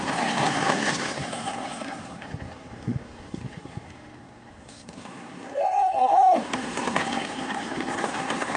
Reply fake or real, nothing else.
fake